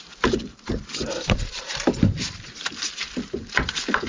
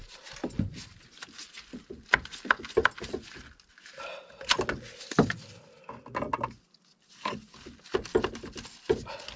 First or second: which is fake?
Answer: first